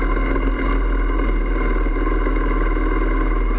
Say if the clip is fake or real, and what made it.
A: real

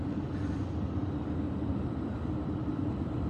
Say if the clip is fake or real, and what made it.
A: real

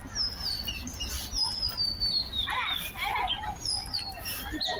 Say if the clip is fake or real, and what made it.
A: real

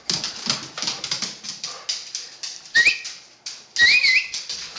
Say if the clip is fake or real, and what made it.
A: real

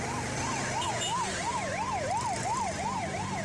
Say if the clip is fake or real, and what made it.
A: real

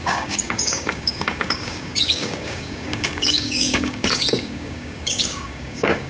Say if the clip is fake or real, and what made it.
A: fake, codec, DAC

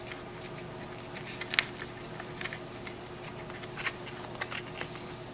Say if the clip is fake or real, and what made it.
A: real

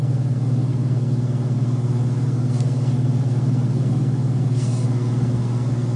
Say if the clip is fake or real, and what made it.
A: fake, codec, SNAC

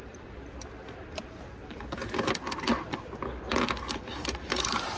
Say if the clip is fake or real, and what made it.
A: real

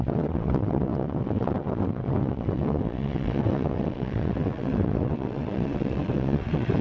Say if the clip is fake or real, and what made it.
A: fake, vocoder, WaveNeXt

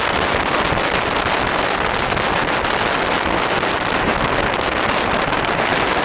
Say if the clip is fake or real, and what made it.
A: real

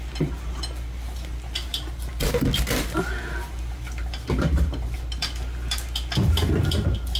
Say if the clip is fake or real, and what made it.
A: real